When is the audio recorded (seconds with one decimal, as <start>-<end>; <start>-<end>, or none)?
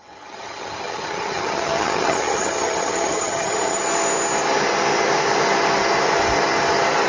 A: 3.8-7.1